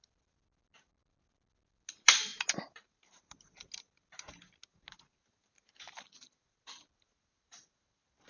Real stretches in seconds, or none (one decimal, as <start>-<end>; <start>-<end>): 0.0-8.3